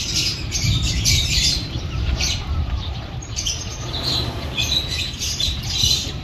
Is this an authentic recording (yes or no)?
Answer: no